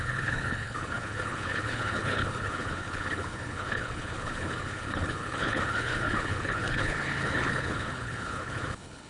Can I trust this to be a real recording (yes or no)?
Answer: no